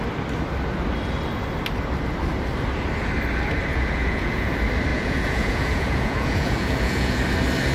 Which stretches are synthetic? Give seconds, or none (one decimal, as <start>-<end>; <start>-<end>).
3.7-4.5; 4.9-7.2